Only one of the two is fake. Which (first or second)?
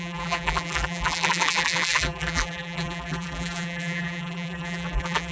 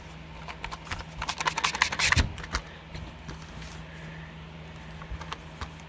first